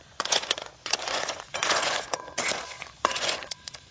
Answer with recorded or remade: remade